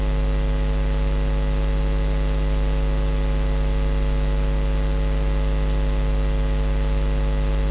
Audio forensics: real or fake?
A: real